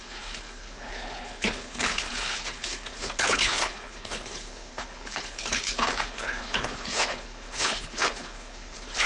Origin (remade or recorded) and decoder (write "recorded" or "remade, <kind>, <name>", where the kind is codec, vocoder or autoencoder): remade, codec, HILCodec